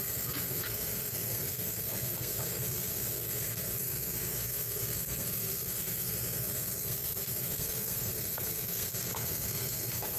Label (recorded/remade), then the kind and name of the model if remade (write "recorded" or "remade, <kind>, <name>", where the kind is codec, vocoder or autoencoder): remade, codec, SNAC